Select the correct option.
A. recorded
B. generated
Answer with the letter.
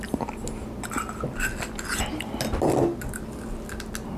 A